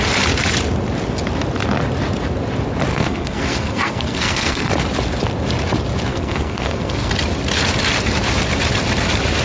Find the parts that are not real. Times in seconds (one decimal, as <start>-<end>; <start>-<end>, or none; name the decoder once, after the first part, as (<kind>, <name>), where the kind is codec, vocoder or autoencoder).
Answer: 2.9-4.7 (codec, SNAC); 6.1-7.1